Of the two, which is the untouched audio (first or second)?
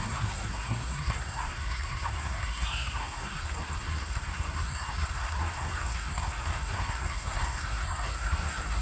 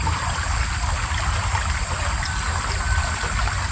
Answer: second